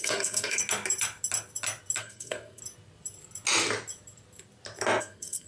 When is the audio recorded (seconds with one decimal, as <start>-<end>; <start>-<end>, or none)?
0.6-2.0; 2.6-5.0

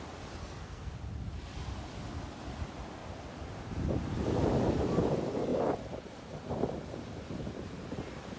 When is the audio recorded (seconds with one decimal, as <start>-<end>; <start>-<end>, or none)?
0.0-0.4; 0.9-8.4

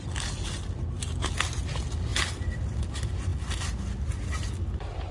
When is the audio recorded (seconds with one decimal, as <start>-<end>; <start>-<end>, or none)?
0.0-5.1

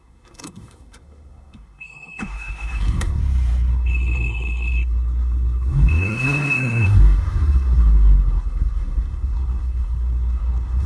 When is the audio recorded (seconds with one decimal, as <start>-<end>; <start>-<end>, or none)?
3.2-3.7

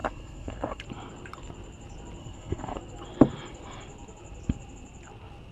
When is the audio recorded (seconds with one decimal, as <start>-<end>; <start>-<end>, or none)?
0.8-2.2; 2.8-5.5

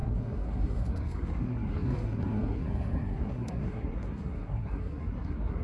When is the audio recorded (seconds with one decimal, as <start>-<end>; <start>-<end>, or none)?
none